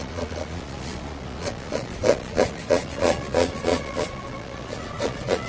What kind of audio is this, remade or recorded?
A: remade